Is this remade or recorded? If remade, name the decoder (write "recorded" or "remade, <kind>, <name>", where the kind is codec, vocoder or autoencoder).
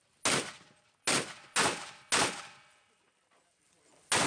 recorded